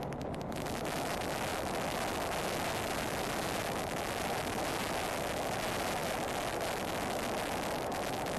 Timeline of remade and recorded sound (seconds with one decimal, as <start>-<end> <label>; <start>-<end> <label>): 0.0-8.4 recorded